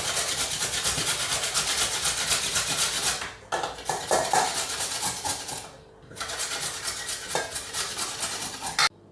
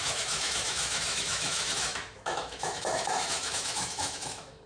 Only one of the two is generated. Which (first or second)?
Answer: second